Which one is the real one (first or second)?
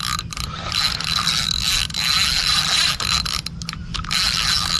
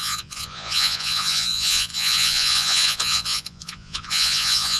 first